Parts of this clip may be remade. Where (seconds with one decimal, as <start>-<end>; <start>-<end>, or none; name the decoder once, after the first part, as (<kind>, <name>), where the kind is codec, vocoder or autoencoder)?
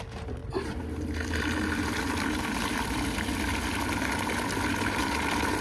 none